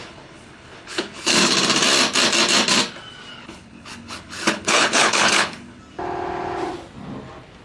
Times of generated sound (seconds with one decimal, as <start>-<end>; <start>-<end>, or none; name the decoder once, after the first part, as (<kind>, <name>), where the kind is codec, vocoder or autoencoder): 0.0-1.5 (codec, HILCodec); 3.3-5.8